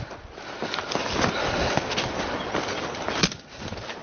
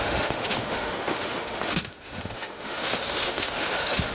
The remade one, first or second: second